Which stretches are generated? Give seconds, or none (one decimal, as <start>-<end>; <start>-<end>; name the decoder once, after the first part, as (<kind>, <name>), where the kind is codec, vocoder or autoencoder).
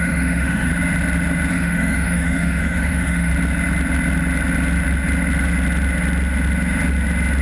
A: 0.0-0.7 (autoencoder, DAC-VAE); 1.5-3.3